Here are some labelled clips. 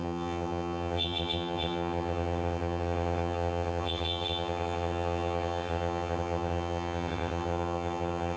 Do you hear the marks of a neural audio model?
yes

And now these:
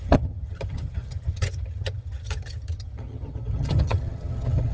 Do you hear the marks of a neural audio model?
yes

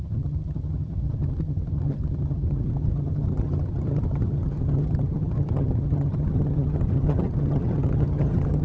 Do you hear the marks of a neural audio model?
yes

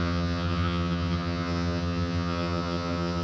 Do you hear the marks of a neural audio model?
yes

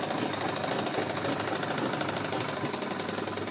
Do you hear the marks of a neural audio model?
no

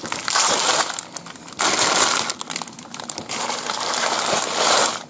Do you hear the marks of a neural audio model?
no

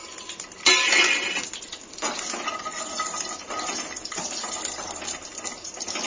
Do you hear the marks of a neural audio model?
no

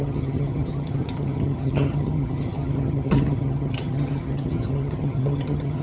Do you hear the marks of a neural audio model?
yes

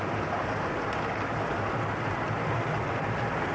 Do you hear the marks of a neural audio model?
no